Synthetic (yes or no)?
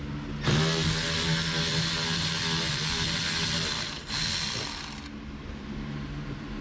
no